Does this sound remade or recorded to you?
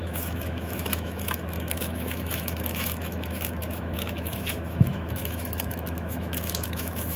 remade